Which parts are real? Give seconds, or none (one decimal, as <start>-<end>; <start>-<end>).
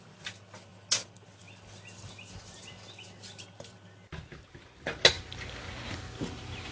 0.0-6.7